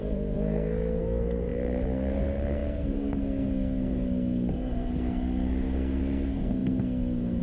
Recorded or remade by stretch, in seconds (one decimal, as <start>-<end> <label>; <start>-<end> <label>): 0.0-7.4 remade